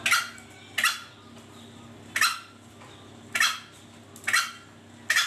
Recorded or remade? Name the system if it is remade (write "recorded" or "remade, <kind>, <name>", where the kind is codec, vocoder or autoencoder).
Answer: recorded